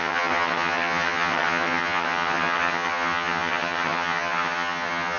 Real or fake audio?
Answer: fake